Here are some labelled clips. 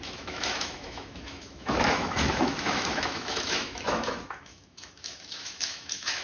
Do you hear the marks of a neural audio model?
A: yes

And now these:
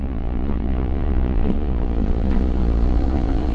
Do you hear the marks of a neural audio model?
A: yes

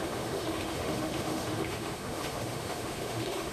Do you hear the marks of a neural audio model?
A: yes